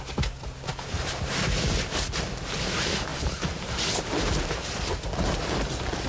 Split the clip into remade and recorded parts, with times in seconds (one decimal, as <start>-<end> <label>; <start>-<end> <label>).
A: 0.0-3.1 recorded; 3.1-4.4 remade; 4.4-6.1 recorded